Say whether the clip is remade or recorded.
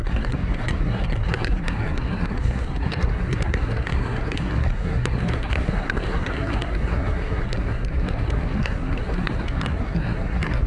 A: remade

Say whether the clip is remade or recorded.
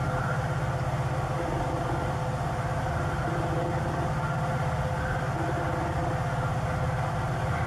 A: recorded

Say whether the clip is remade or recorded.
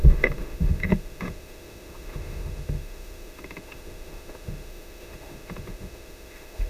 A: remade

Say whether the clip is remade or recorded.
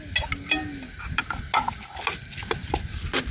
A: recorded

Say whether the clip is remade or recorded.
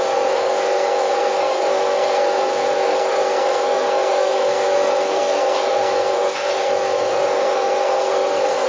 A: remade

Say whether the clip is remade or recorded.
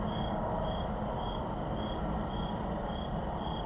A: recorded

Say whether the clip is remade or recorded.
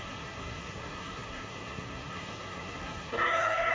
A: remade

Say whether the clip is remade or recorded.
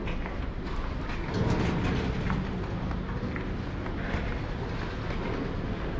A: recorded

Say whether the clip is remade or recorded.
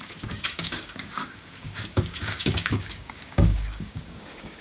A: remade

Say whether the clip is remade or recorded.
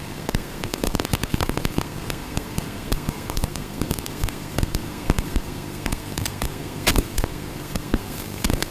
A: remade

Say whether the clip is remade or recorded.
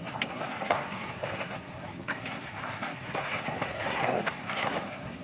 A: remade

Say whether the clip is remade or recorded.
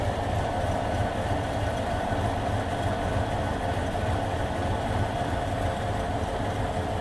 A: recorded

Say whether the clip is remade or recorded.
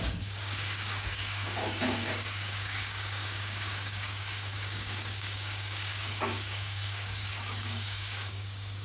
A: remade